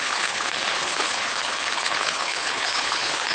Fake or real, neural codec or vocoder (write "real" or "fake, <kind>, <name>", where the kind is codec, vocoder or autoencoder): fake, codec, HILCodec